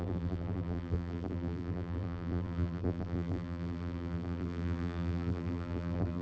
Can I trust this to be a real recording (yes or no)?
no